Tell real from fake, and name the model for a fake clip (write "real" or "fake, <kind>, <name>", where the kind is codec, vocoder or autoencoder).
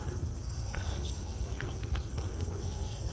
fake, codec, SNAC